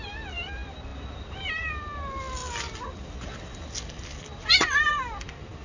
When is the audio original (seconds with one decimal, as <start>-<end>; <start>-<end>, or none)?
0.0-5.6